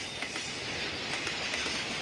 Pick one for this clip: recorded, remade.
recorded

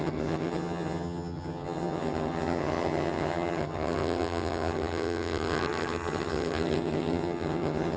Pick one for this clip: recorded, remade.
remade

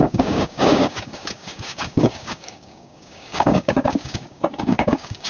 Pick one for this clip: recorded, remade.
remade